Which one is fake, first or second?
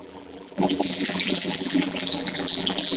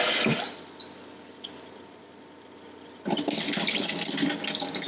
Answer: first